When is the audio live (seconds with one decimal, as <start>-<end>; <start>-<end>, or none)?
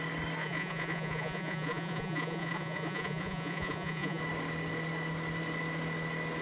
0.0-0.4; 4.2-6.4